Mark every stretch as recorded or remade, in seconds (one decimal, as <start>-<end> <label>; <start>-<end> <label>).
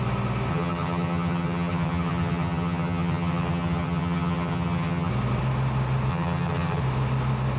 0.0-0.5 recorded; 0.5-5.1 remade; 5.1-6.1 recorded; 6.1-6.8 remade; 6.8-7.6 recorded